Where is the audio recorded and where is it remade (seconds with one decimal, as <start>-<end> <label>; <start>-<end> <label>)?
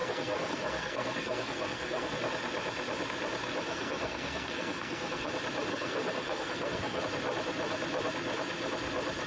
0.0-2.2 remade; 2.2-3.7 recorded; 3.7-5.3 remade; 5.3-5.7 recorded; 5.7-7.0 remade; 7.0-9.3 recorded